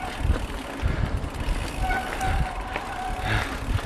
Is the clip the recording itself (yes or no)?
yes